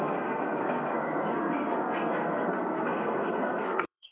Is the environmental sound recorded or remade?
remade